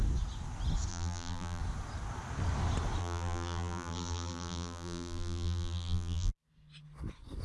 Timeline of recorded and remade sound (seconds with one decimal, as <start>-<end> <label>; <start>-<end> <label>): 0.0-0.9 recorded; 0.9-1.6 remade; 1.6-3.0 recorded; 3.0-6.3 remade; 6.3-7.4 recorded